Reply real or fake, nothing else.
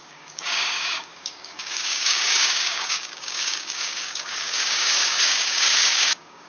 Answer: fake